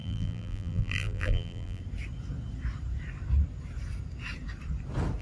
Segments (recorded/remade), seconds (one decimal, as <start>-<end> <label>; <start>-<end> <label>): 0.0-1.8 remade; 1.8-5.2 recorded